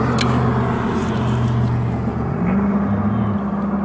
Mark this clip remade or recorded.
recorded